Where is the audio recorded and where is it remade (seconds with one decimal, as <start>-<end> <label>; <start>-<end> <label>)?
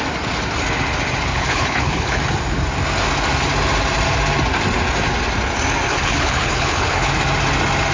0.0-1.3 recorded; 1.3-2.2 remade; 2.2-5.9 recorded; 5.9-7.1 remade; 7.1-7.9 recorded